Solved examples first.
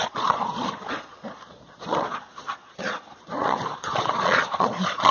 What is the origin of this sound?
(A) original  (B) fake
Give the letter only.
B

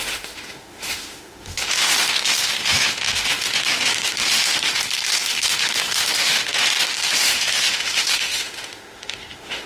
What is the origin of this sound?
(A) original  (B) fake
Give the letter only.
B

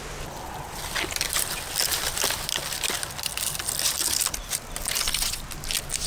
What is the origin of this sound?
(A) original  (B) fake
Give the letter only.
A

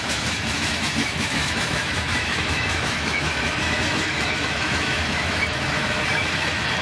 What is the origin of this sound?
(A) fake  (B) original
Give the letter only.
A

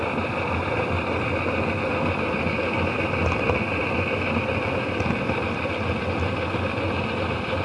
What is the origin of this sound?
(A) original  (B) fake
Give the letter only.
A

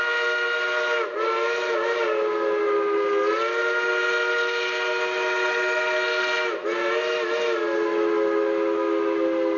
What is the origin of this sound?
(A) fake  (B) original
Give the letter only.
B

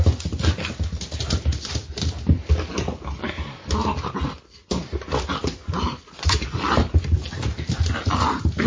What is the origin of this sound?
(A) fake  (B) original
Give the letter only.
B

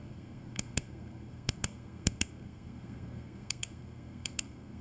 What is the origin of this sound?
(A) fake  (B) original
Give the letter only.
A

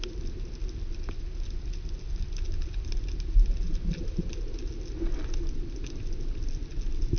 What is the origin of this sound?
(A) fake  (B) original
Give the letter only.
B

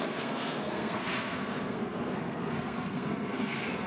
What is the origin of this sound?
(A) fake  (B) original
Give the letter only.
A